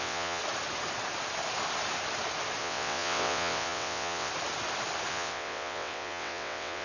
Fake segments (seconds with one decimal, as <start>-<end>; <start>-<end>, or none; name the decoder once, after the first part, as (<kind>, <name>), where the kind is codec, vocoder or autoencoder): 0.0-0.4 (vocoder, WaveNeXt); 2.6-4.3; 5.1-6.8